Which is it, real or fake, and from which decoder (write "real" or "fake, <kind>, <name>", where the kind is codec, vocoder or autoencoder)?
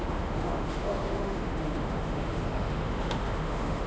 fake, autoencoder, DAC-VAE